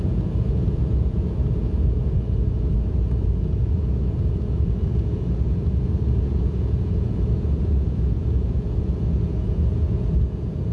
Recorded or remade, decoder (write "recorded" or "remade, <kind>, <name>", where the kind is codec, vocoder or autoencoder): remade, vocoder, Vocos